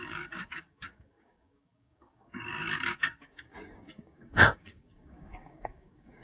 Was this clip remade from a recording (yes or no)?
yes